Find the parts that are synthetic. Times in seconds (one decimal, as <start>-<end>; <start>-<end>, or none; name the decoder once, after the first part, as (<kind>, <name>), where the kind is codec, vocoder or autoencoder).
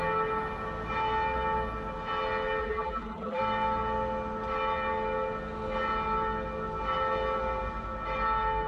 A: 2.6-3.4 (vocoder, BigVGAN v2)